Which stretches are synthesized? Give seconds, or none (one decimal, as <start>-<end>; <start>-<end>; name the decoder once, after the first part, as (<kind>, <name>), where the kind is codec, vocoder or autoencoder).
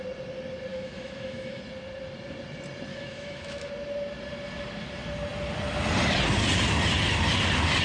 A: 0.7-1.6 (autoencoder, DAC-VAE); 2.9-3.7